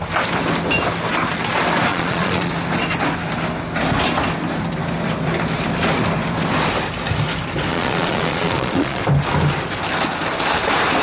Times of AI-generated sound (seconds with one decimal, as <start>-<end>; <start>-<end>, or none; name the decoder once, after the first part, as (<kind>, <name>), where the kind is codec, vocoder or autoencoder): 1.9-2.5 (vocoder, Vocos); 7.7-9.0